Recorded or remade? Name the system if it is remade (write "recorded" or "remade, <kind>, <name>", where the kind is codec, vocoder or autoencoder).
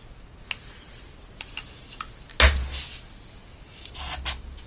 recorded